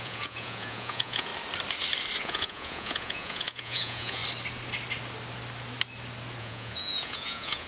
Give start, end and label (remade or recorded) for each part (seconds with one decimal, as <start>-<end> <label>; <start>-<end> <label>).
0.0-1.3 remade; 1.3-2.2 recorded; 2.2-4.2 remade; 4.2-6.4 recorded; 6.4-7.7 remade

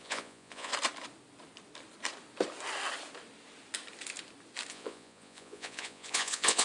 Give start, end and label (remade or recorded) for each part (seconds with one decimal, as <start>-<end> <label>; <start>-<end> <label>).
0.0-0.7 remade; 0.7-4.7 recorded; 4.7-6.6 remade

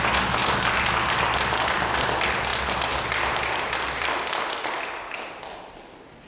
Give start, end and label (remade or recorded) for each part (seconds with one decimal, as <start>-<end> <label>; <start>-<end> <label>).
0.0-6.3 recorded

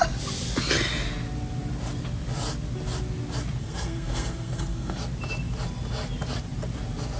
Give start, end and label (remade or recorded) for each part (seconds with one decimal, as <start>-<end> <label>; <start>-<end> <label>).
0.0-3.6 recorded; 3.6-5.0 remade; 5.0-7.2 recorded

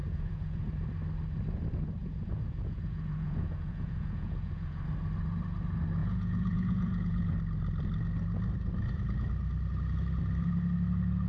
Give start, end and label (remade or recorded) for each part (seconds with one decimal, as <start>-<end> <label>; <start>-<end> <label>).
0.0-0.6 remade; 0.6-2.0 recorded; 2.0-4.8 remade; 4.8-6.0 recorded; 6.0-7.3 remade; 7.3-11.3 recorded